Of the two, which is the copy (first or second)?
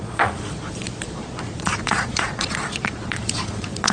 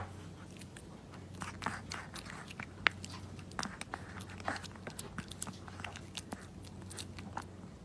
first